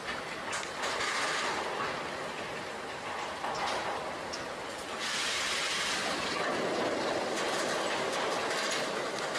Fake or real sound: real